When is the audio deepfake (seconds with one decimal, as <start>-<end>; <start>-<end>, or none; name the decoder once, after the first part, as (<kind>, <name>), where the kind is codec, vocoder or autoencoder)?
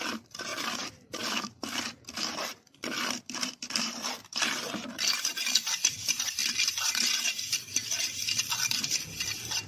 0.0-9.7 (vocoder, BigVGAN v2)